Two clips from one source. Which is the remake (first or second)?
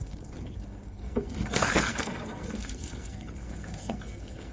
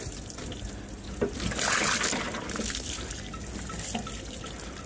first